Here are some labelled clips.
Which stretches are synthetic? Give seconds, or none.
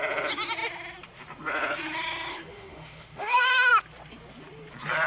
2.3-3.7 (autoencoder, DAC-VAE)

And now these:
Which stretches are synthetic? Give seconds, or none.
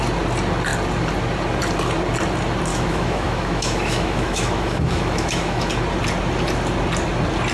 2.7-5.7 (autoencoder, DAC-VAE)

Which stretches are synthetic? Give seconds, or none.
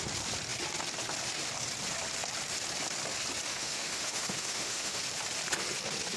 3.5-5.0 (autoencoder, DAC-VAE)